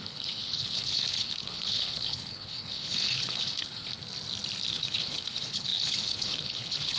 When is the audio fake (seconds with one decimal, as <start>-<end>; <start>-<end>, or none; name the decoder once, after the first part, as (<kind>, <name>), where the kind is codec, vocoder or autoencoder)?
0.0-3.9 (codec, HILCodec); 4.7-7.0